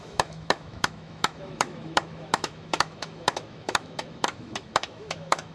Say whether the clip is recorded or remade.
remade